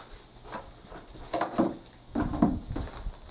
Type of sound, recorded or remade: recorded